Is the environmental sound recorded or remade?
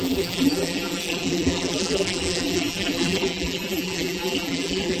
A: remade